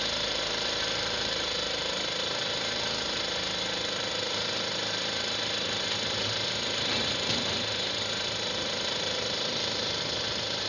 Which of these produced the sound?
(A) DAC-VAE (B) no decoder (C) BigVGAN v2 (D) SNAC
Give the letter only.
B